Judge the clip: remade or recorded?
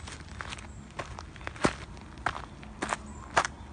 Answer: recorded